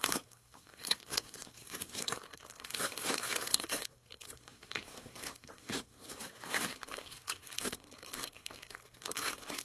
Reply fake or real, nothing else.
fake